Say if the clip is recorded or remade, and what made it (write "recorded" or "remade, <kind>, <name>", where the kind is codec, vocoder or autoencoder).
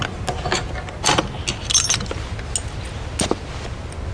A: recorded